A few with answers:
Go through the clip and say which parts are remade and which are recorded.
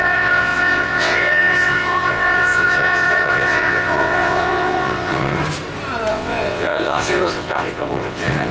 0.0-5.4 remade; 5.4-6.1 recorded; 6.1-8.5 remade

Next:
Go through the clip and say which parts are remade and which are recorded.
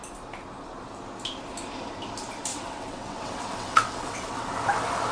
0.0-2.5 recorded; 2.5-4.5 remade; 4.5-5.1 recorded